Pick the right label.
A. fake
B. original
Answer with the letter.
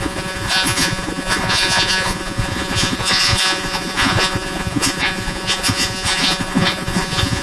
A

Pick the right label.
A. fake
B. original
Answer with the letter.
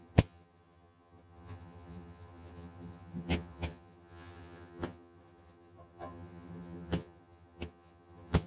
A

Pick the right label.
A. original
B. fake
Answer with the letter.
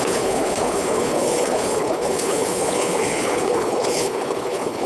B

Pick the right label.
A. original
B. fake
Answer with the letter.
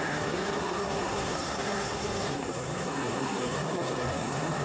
B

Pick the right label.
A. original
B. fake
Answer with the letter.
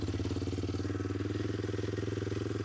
A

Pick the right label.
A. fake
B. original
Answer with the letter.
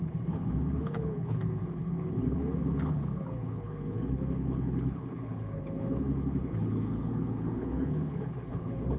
A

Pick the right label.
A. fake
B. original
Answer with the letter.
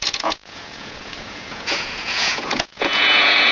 A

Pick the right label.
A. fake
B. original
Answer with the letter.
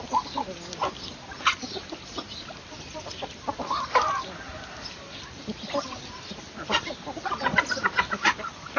B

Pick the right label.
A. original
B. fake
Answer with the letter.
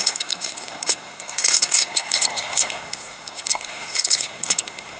B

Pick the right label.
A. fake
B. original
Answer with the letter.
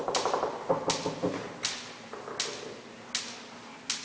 B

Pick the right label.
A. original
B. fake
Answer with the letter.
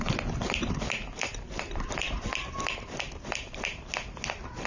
A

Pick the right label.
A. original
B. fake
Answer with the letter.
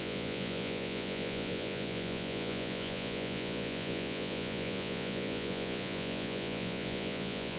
B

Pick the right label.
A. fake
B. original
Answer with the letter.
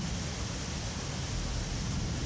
B